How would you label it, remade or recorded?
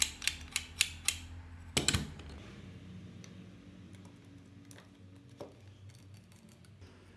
recorded